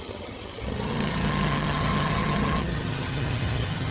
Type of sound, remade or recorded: remade